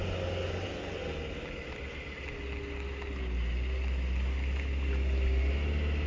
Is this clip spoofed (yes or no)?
no